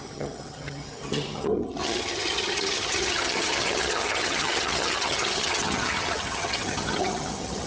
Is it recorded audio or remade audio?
remade